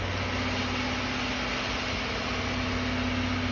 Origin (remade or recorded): recorded